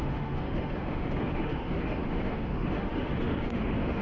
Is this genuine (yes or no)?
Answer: no